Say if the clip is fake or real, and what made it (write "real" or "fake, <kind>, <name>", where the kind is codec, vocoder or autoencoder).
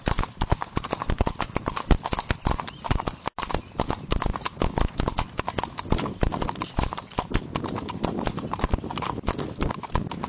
real